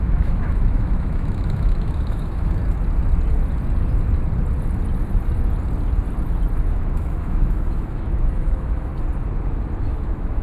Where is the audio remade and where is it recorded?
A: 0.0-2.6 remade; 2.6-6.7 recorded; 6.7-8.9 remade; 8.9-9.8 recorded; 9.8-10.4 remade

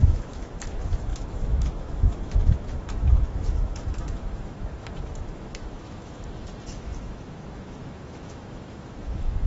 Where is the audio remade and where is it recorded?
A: 0.0-9.5 remade

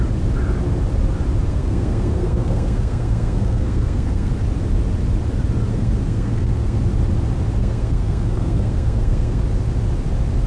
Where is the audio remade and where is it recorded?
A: 0.0-1.5 recorded; 1.5-4.3 remade; 4.3-5.7 recorded; 5.7-6.8 remade; 6.8-7.6 recorded; 7.6-9.4 remade; 9.4-10.5 recorded

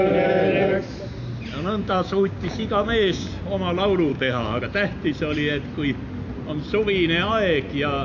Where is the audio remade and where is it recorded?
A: 0.0-1.6 recorded; 1.6-3.3 remade; 3.3-4.1 recorded; 4.1-4.6 remade; 4.6-8.0 recorded